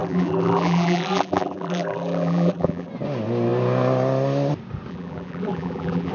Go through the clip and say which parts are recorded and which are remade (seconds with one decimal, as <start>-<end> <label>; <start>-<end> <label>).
0.0-2.9 remade; 2.9-4.9 recorded; 4.9-6.1 remade